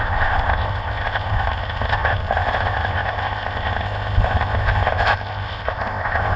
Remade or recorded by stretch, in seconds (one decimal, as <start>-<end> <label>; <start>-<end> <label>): 0.0-6.4 remade